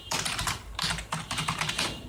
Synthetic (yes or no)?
yes